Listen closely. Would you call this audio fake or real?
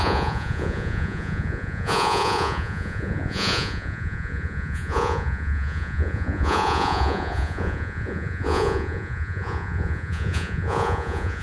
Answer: fake